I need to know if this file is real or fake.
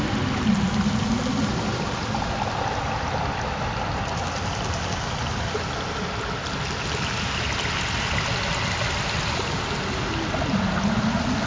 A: real